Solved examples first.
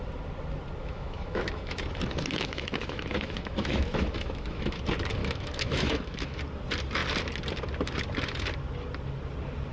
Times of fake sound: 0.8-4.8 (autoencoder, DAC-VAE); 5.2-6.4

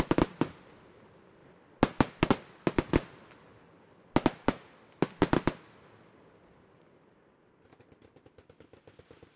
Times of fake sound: none

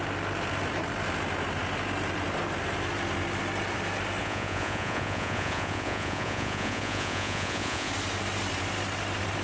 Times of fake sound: 4.2-7.9 (vocoder, Vocos)